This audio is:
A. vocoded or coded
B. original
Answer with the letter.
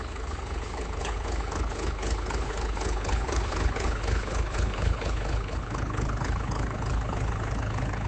A